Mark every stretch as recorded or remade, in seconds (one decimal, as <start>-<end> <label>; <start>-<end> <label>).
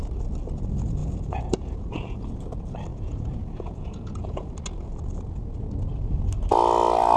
0.0-1.0 recorded; 1.0-2.2 remade; 2.2-2.9 recorded; 2.9-4.5 remade; 4.5-7.2 recorded